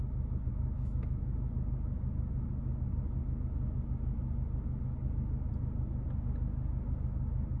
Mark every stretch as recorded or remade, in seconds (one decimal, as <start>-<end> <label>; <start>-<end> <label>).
0.0-0.5 recorded; 0.5-1.5 remade; 1.5-7.6 recorded